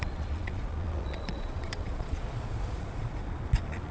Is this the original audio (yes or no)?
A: no